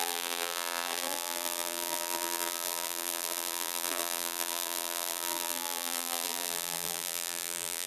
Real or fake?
fake